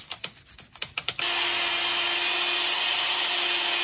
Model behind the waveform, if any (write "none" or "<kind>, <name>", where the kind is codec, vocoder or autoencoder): none